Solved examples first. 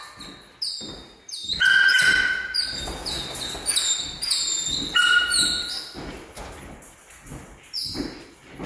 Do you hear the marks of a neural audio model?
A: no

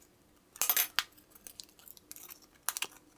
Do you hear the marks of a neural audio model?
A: no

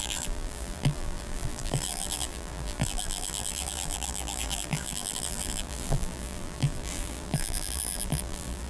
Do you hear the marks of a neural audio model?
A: yes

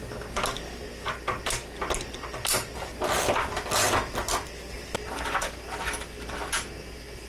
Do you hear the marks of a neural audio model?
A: no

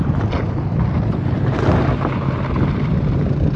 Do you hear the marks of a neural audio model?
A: yes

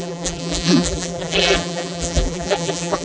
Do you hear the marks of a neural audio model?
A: yes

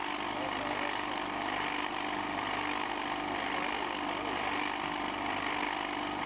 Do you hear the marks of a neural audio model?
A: no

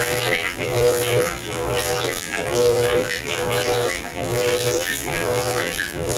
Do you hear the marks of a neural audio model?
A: yes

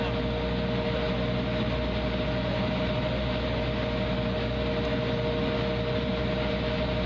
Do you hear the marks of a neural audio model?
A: no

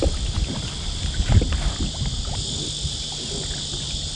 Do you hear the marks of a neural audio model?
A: no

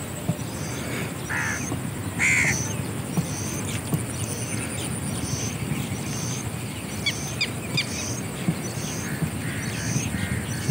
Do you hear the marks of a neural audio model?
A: no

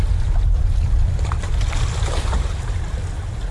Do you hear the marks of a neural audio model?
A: yes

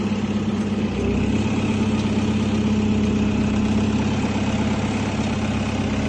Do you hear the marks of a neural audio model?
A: no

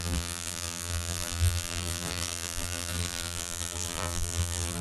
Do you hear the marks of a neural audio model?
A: yes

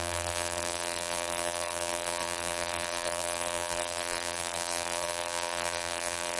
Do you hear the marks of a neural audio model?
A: yes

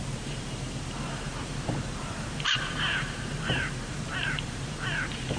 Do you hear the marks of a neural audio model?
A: yes